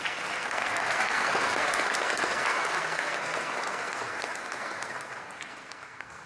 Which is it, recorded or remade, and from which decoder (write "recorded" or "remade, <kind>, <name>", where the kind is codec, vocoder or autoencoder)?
remade, codec, SNAC